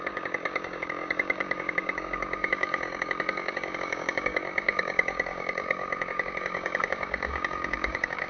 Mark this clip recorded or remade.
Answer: remade